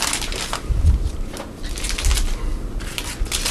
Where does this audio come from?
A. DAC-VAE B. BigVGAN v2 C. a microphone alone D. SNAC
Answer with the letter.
C